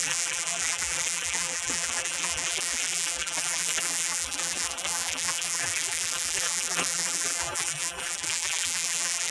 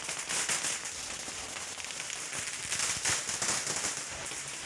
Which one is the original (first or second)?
second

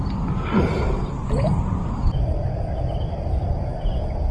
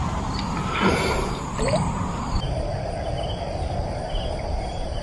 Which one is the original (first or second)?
first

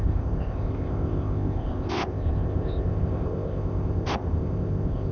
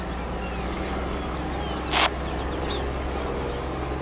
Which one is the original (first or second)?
second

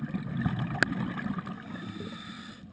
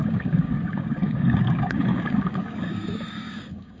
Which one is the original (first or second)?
first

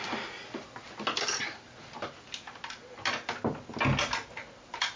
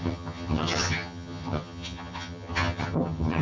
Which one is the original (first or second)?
first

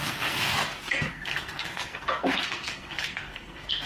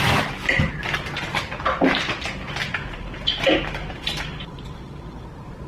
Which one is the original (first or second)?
second